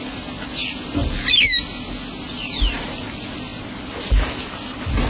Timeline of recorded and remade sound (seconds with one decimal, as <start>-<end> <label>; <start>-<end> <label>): 0.0-5.1 recorded